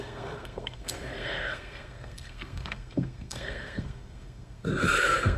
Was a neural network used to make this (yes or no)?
yes